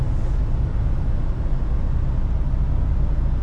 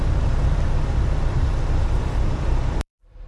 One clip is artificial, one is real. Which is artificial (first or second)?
second